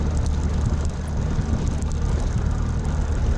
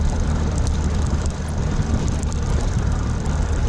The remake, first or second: second